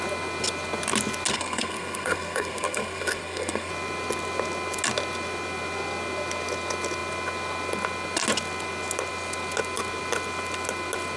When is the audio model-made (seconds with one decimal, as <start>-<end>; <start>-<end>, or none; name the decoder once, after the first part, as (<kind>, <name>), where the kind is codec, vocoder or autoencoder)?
1.3-3.7 (codec, SNAC)